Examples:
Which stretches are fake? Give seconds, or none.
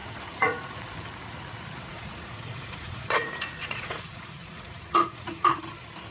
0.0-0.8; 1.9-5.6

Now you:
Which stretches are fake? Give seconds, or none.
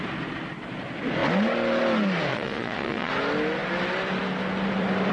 2.3-3.1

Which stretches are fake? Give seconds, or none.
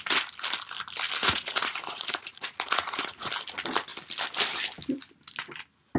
1.2-3.3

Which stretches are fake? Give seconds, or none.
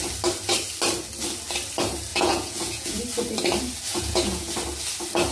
2.1-3.0; 3.9-4.5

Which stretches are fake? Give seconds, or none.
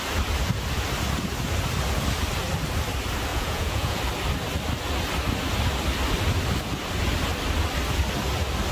3.3-4.0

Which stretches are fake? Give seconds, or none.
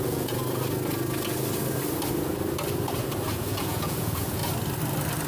0.0-0.4; 3.3-4.4